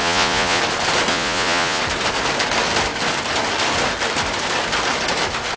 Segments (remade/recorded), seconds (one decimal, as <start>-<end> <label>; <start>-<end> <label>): 0.0-0.6 remade; 0.6-1.1 recorded; 1.1-1.8 remade; 1.8-5.6 recorded